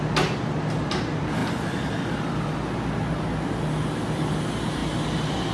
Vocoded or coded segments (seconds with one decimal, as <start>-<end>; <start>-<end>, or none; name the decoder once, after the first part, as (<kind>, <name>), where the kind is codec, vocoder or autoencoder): none